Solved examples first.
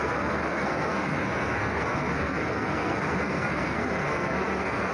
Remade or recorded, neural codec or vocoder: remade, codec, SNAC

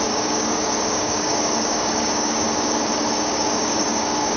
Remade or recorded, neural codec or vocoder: remade, codec, DAC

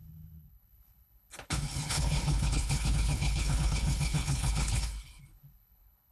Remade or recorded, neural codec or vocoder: remade, codec, HILCodec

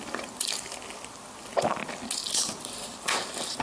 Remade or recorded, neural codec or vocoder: recorded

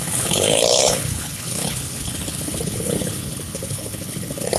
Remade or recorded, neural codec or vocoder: remade, codec, HILCodec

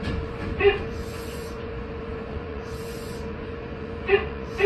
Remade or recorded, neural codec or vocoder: remade, vocoder, Vocos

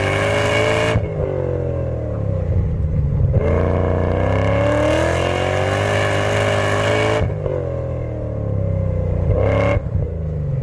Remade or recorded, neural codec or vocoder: recorded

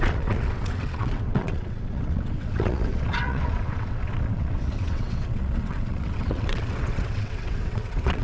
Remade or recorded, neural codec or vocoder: remade, vocoder, WaveNeXt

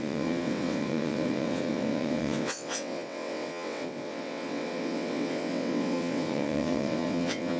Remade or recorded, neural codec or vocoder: remade, vocoder, WaveNeXt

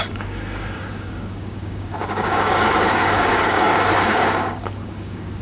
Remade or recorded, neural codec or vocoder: remade, codec, DAC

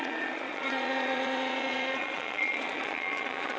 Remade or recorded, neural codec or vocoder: remade, vocoder, Vocos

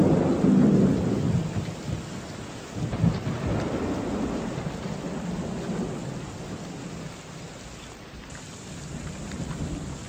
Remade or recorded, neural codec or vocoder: recorded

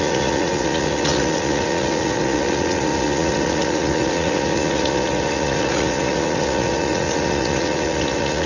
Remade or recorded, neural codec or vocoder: remade, vocoder, Vocos